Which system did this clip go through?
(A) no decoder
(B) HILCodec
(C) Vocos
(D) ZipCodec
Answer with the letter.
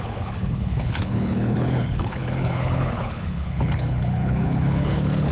B